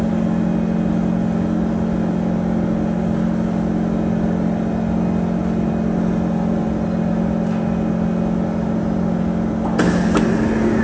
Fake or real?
real